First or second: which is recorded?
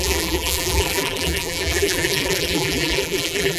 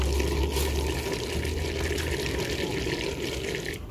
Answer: second